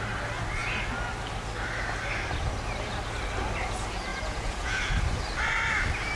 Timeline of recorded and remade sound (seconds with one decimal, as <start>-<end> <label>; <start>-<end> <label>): 0.0-4.1 recorded; 4.1-4.8 remade; 4.8-6.2 recorded